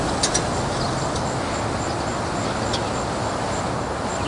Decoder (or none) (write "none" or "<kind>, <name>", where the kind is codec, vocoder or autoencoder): none